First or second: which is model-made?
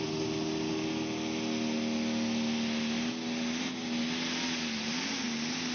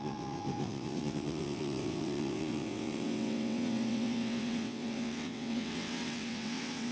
second